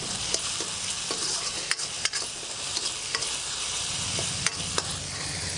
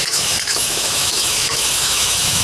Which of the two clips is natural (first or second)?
first